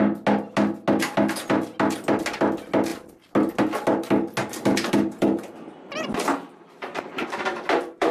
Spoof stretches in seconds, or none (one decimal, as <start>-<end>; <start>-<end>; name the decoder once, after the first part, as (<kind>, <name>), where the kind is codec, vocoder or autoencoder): 4.4-8.1 (vocoder, BigVGAN v2)